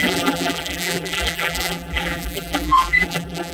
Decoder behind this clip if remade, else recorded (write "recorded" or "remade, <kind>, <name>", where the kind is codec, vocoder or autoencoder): remade, vocoder, BigVGAN v2